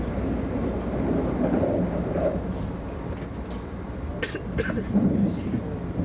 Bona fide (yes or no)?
yes